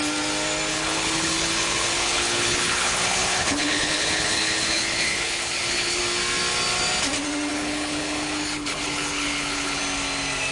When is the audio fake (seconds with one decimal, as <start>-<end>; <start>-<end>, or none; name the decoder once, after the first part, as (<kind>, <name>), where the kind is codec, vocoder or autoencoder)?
0.7-6.0 (codec, HILCodec); 7.5-9.8